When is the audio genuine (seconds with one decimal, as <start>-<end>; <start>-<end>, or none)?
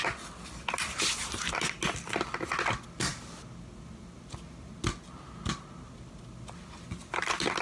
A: 0.0-7.6